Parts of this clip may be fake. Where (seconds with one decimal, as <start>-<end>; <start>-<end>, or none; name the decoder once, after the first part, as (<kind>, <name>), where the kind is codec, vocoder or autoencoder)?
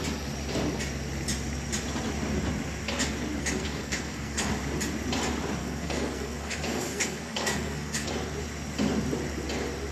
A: 3.4-4.5 (codec, SNAC); 5.6-8.1